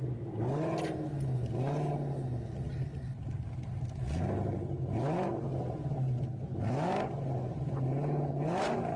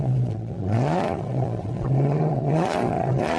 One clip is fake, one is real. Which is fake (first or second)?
second